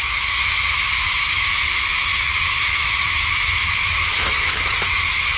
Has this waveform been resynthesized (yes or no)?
yes